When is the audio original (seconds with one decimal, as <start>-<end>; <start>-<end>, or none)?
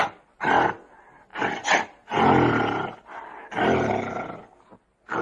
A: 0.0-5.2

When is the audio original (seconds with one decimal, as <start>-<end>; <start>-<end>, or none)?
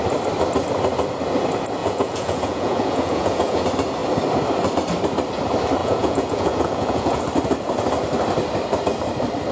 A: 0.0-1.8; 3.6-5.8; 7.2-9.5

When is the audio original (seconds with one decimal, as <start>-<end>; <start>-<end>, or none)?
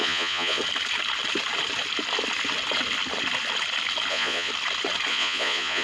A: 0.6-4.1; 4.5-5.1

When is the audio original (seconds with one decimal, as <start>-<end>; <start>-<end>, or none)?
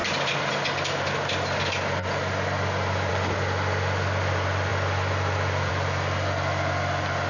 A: 0.0-7.3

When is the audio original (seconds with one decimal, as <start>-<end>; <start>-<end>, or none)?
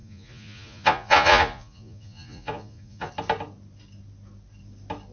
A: 3.1-5.1